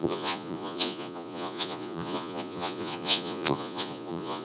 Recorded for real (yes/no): no